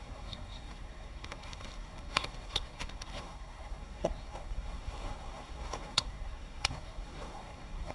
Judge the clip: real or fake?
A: fake